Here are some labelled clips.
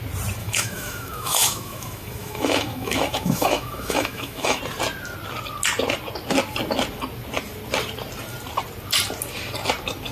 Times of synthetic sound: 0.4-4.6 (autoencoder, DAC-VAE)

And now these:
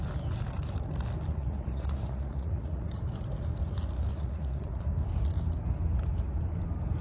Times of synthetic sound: 1.3-2.9 (vocoder, Vocos); 4.1-4.8

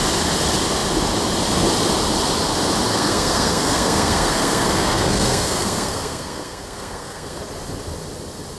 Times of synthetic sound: 2.9-7.4 (codec, SNAC)

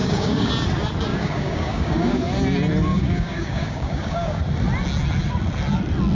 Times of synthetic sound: 0.0-0.5 (codec, DAC); 1.1-2.2; 2.9-4.4

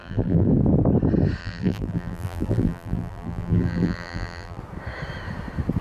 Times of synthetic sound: 0.0-0.5 (vocoder, BigVGAN v2); 1.4-4.6

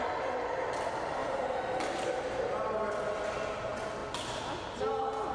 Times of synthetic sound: 1.2-2.7 (vocoder, BigVGAN v2)